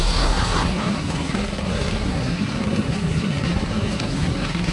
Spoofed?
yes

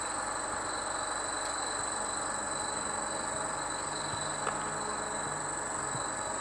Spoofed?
no